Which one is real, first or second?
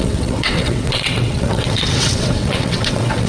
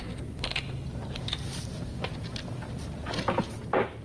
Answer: second